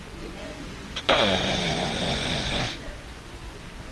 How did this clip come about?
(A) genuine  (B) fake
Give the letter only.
B